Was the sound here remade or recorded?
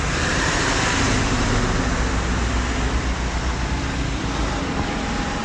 recorded